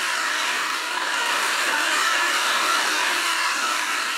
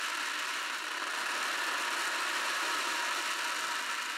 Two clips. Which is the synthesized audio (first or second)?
first